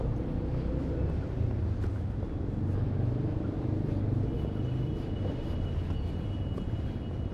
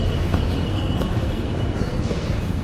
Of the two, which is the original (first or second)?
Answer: first